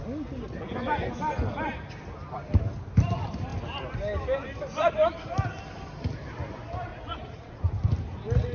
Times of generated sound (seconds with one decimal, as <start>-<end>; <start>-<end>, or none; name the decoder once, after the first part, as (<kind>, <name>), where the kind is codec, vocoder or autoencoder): 6.9-7.7 (vocoder, Vocos)